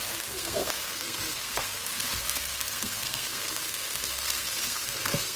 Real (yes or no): no